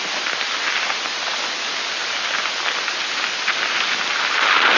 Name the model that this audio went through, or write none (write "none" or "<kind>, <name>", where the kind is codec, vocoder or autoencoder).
none